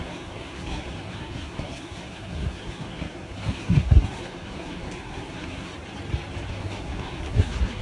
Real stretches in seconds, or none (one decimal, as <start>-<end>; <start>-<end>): 5.7-6.5